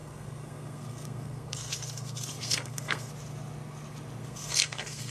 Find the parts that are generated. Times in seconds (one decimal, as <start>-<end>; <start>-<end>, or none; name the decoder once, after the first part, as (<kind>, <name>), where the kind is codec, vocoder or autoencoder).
0.0-3.1 (codec, SNAC); 4.2-5.1